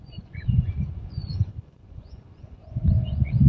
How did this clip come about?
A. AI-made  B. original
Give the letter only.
A